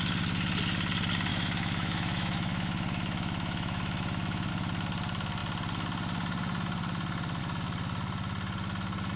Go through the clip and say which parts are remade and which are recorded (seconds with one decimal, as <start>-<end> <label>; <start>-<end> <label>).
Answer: 0.0-1.3 recorded; 1.3-4.5 remade; 4.5-9.2 recorded